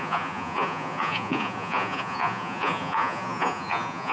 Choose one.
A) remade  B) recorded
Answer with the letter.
A